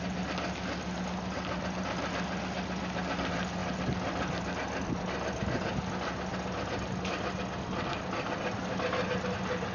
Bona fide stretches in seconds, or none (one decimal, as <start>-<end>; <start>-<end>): 0.0-9.7